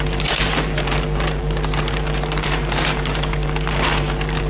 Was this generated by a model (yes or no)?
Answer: yes